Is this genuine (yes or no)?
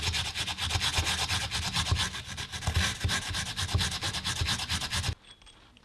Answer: yes